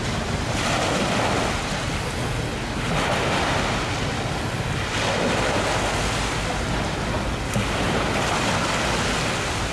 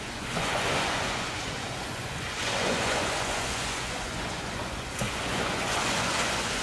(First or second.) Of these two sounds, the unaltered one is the first